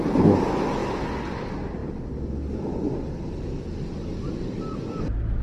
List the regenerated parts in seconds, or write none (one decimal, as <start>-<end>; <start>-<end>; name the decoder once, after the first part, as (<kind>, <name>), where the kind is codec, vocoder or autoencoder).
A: none